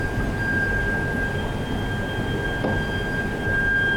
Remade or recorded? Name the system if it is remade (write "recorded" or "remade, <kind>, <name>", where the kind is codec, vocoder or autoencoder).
recorded